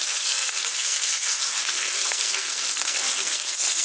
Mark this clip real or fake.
fake